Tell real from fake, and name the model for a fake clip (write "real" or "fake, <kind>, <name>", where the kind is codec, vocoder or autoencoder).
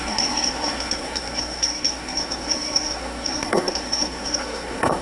fake, codec, SNAC